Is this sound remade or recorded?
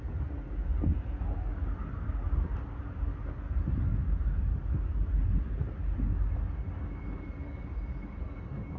recorded